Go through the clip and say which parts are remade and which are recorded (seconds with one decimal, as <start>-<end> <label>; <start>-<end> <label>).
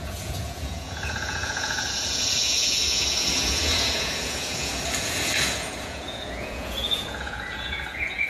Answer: 0.0-8.3 remade